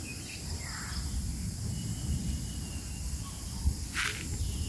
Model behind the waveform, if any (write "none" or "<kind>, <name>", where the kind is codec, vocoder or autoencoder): none